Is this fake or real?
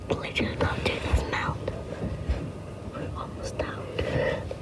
real